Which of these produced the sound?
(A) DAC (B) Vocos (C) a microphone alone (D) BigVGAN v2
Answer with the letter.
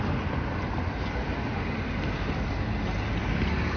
C